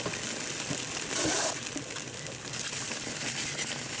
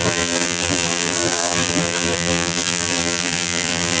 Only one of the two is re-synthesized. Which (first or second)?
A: second